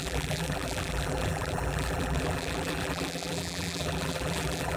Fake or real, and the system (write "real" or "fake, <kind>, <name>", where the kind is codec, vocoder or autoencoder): fake, vocoder, BigVGAN v2